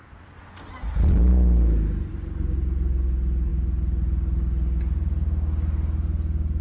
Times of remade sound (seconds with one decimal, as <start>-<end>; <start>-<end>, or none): none